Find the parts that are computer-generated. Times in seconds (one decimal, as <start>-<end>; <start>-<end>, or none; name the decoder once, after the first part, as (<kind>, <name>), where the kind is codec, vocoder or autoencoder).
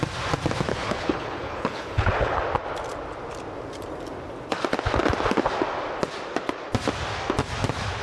0.7-2.4 (codec, HILCodec)